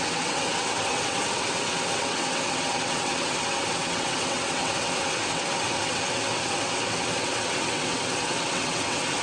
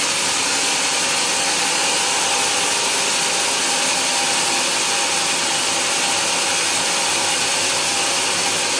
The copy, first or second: first